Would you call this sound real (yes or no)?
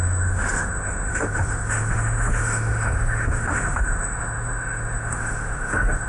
no